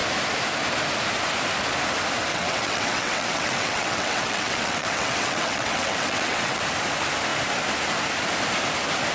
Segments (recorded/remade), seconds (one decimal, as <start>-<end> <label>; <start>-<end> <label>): 0.0-2.3 recorded; 2.3-6.6 remade; 6.6-9.1 recorded